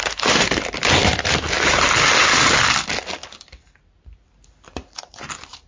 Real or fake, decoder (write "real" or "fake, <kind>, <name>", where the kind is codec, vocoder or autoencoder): real